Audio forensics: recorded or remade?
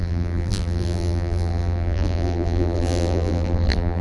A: remade